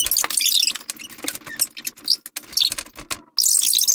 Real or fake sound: real